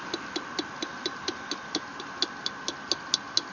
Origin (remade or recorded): recorded